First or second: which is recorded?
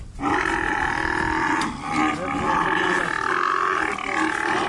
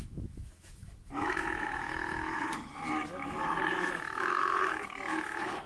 first